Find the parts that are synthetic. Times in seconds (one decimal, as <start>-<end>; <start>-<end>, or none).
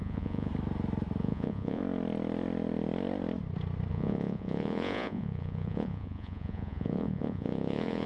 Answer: 0.0-0.5; 1.2-1.8; 3.9-8.1